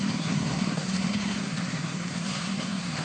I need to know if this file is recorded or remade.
remade